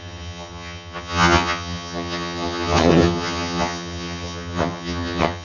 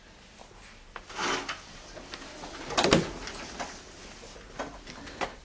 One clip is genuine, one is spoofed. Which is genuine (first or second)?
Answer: second